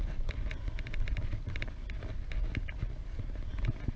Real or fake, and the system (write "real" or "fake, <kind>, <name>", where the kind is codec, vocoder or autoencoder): real